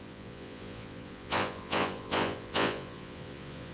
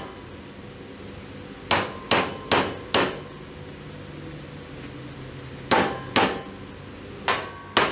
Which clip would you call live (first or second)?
second